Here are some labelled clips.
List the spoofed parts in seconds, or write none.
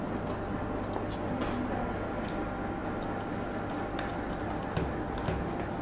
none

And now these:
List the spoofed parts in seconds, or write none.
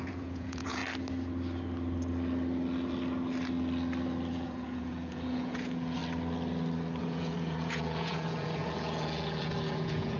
0.0-0.8 (vocoder, Vocos); 4.3-6.0; 7.0-10.2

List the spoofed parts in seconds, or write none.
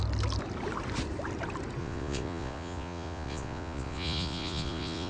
1.8-5.1 (vocoder, Vocos)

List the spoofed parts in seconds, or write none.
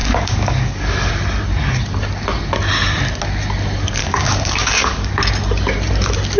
0.0-1.1 (codec, DAC); 4.0-5.1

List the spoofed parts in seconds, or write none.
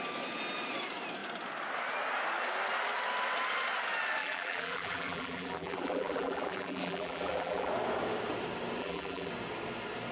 4.2-7.7 (vocoder, BigVGAN v2); 8.8-9.3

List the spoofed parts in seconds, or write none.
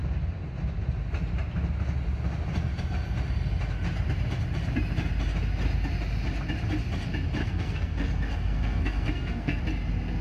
7.4-9.6 (codec, SNAC)